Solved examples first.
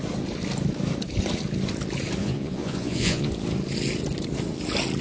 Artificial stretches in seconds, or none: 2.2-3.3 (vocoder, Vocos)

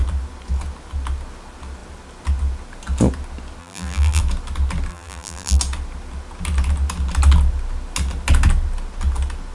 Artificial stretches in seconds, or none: 3.6-4.2 (vocoder, BigVGAN v2); 4.9-5.6

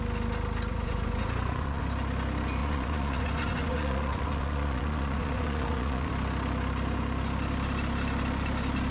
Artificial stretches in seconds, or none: 0.7-1.8 (vocoder, Vocos); 2.6-6.1

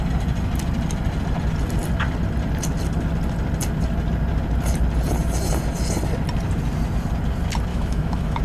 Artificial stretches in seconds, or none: 7.7-8.4 (autoencoder, DAC-VAE)

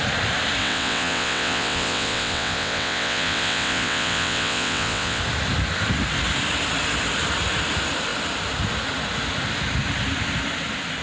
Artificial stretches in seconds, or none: 0.6-5.2 (vocoder, WaveNeXt)

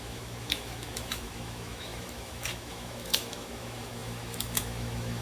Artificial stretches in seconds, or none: 0.0-5.2 (autoencoder, DAC-VAE)